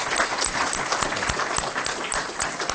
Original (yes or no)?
no